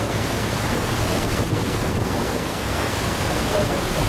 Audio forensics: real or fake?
fake